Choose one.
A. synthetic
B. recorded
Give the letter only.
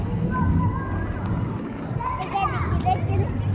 B